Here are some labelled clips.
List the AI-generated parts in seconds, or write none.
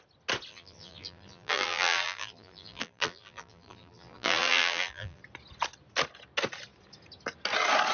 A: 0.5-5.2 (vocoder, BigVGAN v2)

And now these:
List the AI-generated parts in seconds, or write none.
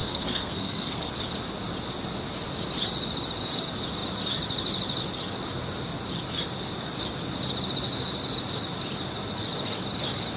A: 0.0-1.1 (codec, SNAC)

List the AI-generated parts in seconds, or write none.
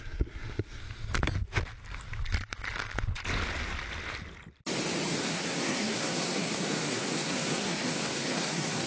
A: 0.0-0.8 (codec, SNAC); 5.2-8.9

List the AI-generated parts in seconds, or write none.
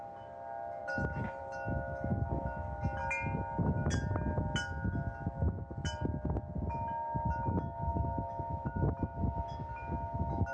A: none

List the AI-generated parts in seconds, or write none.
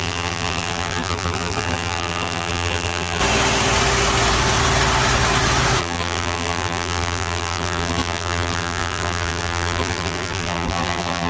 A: 0.0-3.2 (vocoder, BigVGAN v2); 5.8-11.3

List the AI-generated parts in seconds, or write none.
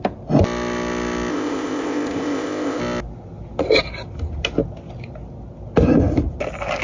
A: 1.3-2.8 (codec, ZipCodec)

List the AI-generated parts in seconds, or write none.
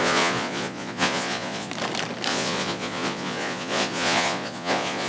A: 0.0-1.7 (vocoder, Vocos); 2.3-5.1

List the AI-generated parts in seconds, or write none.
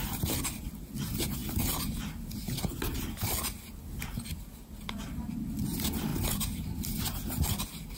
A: none